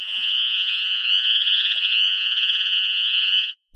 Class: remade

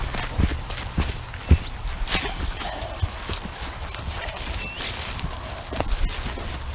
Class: recorded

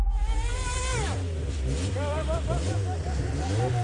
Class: recorded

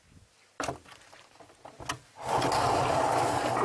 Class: recorded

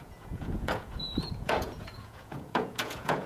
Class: remade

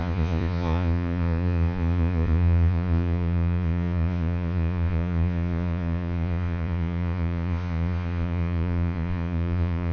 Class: remade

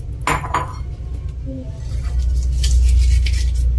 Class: recorded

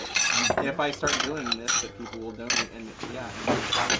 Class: recorded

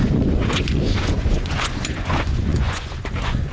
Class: remade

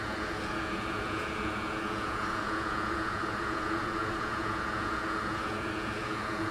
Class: remade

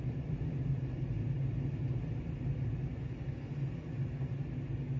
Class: recorded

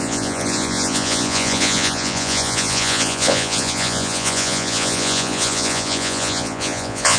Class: remade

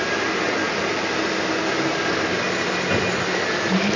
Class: recorded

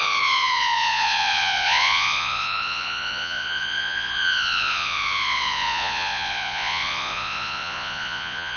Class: remade